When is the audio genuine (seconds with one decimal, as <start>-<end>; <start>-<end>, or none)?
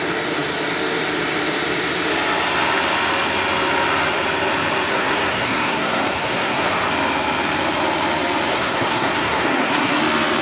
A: 0.0-4.9; 6.9-8.5; 10.0-10.4